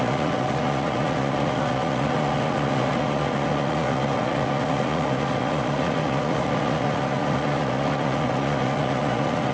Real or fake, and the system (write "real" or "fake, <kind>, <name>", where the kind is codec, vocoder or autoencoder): fake, vocoder, Vocos